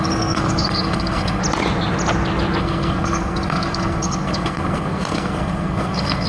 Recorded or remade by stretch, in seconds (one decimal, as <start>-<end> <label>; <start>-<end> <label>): 0.0-1.4 remade; 1.4-2.6 recorded; 2.6-6.3 remade